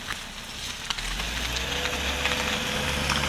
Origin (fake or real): real